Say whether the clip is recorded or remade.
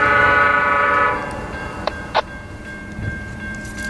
remade